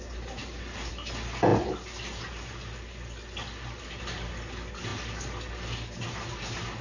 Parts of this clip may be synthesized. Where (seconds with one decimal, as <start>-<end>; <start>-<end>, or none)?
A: none